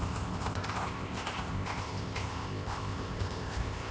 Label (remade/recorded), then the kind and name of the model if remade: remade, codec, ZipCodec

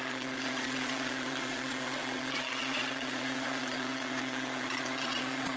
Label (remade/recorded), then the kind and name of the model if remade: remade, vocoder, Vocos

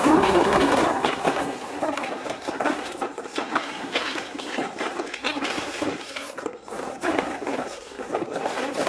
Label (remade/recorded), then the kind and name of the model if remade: remade, codec, SNAC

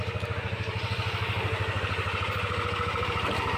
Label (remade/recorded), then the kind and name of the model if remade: recorded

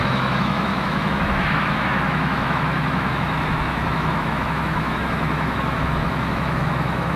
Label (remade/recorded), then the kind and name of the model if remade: remade, autoencoder, DAC-VAE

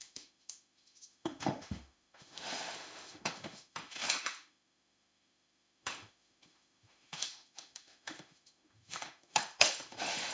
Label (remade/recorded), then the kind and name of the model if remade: remade, autoencoder, DAC-VAE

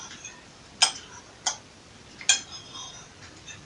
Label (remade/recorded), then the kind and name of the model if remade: recorded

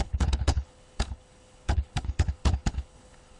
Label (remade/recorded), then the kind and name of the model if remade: remade, codec, HILCodec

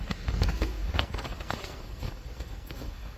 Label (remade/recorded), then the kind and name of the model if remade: remade, codec, SNAC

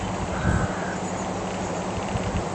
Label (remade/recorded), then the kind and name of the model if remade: remade, vocoder, BigVGAN v2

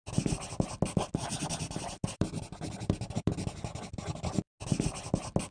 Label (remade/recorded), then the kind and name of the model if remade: recorded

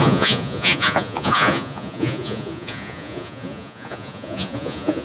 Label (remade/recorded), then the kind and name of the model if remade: remade, vocoder, Vocos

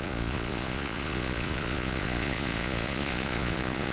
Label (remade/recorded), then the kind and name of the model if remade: remade, vocoder, Vocos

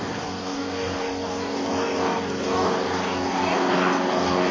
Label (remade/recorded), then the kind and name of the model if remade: remade, codec, DAC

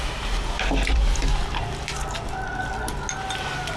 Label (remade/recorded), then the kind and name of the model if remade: recorded